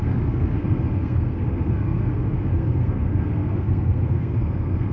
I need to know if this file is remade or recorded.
remade